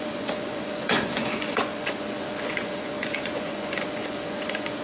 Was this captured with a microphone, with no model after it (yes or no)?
no